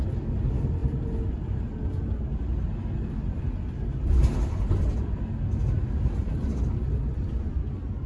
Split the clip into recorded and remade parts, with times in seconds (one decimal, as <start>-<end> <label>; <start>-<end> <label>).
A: 0.0-8.1 recorded